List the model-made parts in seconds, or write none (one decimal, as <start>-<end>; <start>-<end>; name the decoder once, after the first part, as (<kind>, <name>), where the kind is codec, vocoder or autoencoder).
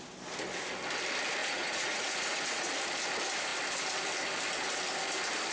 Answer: 1.4-2.7 (vocoder, Vocos)